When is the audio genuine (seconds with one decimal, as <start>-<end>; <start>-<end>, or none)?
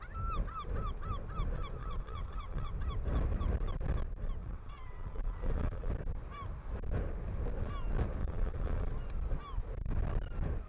0.0-1.8; 2.7-4.4; 5.9-8.2; 8.9-10.7